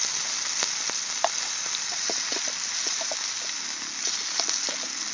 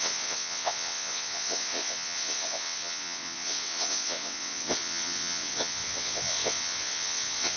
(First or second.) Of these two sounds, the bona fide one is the first